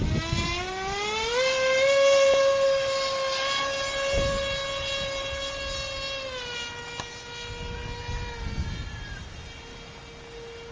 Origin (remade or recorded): recorded